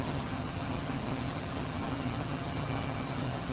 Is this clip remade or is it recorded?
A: remade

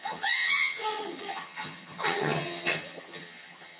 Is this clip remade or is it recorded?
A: remade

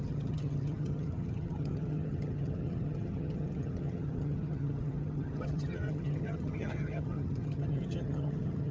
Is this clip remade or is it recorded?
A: remade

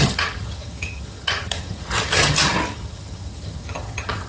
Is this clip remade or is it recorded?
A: remade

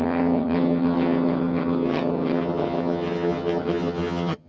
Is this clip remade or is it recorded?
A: remade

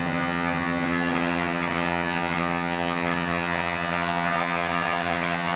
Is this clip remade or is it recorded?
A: remade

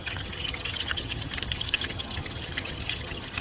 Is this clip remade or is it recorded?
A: remade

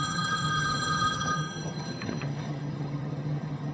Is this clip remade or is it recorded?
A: remade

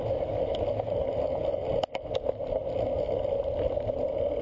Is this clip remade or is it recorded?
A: recorded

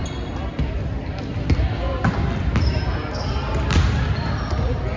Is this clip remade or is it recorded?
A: recorded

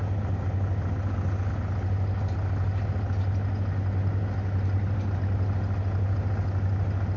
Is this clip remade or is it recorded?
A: recorded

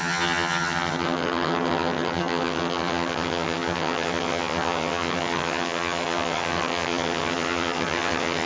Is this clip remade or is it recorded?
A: remade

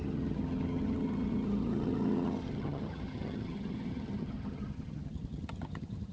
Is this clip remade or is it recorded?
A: remade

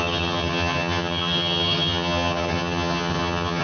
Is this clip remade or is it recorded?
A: remade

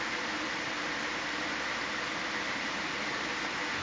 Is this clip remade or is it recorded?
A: recorded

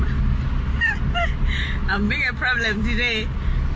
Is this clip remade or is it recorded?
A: recorded